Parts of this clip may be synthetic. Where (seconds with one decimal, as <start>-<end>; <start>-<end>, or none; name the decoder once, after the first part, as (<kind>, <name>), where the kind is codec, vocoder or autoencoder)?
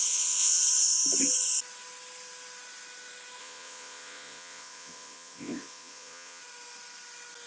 0.0-0.6 (vocoder, Vocos); 3.4-6.4